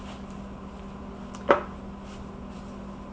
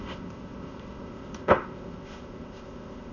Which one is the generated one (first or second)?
second